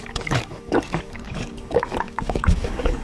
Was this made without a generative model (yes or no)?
no